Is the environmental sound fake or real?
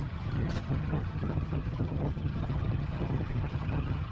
fake